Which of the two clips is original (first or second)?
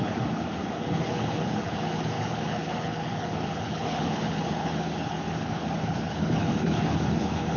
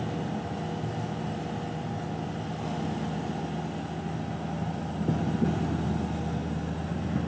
second